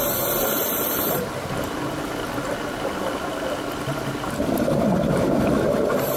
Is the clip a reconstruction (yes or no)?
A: no